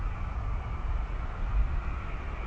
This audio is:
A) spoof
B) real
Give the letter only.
B